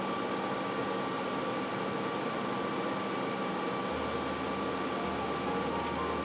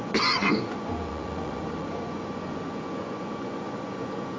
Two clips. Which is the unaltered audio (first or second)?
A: first